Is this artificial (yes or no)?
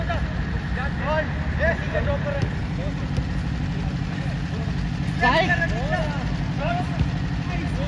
no